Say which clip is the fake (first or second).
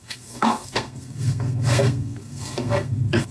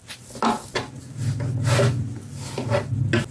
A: first